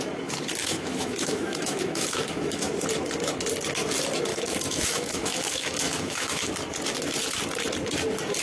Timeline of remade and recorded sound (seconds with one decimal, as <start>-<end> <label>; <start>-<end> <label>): 0.0-0.6 recorded; 0.6-2.7 remade; 2.7-4.3 recorded; 4.3-6.5 remade; 6.5-8.4 recorded